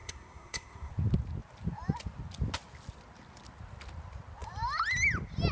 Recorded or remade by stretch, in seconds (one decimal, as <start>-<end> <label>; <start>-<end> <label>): 0.0-0.9 remade; 0.9-5.5 recorded